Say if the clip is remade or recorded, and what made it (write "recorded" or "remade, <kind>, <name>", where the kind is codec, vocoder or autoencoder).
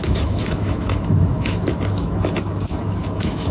remade, autoencoder, DAC-VAE